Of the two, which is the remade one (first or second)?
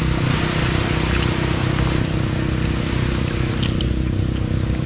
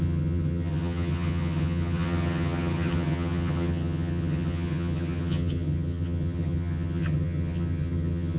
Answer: second